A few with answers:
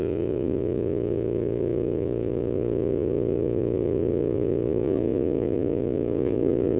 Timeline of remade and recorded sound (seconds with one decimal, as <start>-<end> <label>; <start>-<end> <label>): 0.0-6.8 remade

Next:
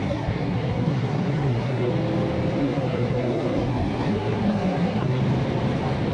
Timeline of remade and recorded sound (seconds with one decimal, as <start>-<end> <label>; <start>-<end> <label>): 0.0-1.9 remade; 1.9-2.6 recorded; 2.6-5.2 remade; 5.2-6.1 recorded

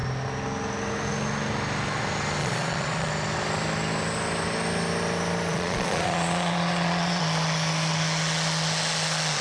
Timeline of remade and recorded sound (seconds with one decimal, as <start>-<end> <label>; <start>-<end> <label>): 0.0-2.4 recorded; 2.4-3.1 remade; 3.1-5.5 recorded; 5.5-7.2 remade; 7.2-9.4 recorded

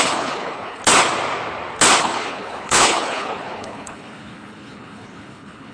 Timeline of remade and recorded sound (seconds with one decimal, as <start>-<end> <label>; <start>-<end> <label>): 0.0-0.8 remade; 0.8-2.0 recorded; 2.0-5.7 remade